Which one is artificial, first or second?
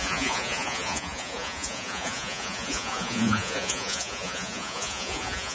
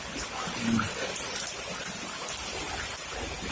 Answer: first